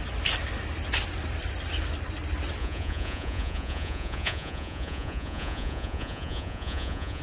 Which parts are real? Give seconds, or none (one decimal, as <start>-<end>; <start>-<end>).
0.0-2.6